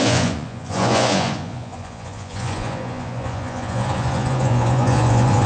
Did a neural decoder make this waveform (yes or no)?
yes